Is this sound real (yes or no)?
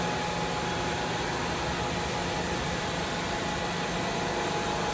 yes